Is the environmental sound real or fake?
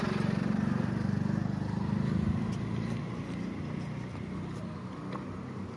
real